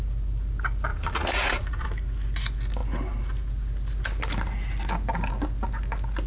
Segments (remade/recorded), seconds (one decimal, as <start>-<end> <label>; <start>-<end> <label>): 0.0-0.9 recorded; 0.9-1.9 remade; 1.9-6.3 recorded